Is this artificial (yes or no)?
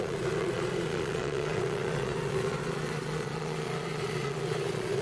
yes